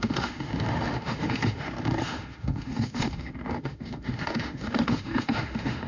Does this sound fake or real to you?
fake